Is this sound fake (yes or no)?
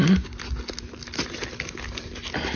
no